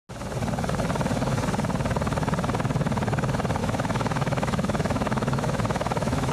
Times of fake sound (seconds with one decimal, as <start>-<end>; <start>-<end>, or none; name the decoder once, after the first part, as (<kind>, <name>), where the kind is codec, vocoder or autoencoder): 3.6-6.3 (autoencoder, DAC-VAE)